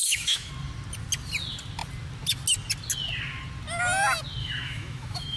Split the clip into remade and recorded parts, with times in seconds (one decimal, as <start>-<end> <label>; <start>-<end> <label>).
0.0-0.5 remade; 0.5-4.4 recorded; 4.4-5.4 remade